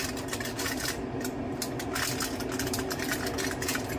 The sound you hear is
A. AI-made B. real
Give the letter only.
B